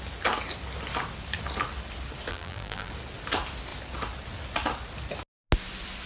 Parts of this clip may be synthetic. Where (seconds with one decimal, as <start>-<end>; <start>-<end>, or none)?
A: 2.3-2.9